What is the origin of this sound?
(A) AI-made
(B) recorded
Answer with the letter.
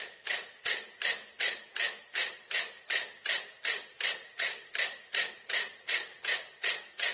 A